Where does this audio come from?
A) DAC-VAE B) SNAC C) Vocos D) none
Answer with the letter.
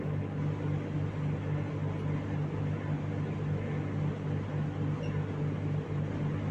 D